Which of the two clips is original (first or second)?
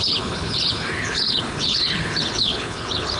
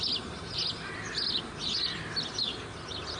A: second